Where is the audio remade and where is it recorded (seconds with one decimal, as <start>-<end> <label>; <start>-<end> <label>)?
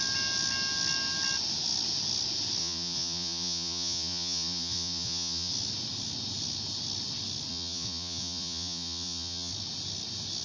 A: 0.0-2.6 recorded; 2.6-5.5 remade; 5.5-7.5 recorded; 7.5-9.5 remade; 9.5-10.4 recorded